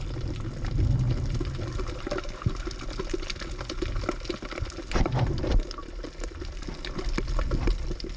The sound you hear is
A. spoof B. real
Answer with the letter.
B